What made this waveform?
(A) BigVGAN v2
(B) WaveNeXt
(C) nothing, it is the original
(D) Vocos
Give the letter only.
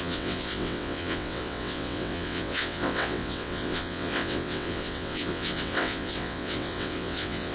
B